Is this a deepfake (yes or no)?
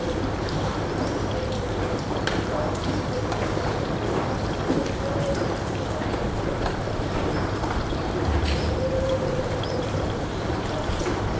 yes